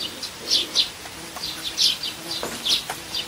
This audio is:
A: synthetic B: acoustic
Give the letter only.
B